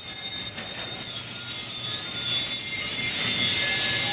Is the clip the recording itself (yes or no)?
yes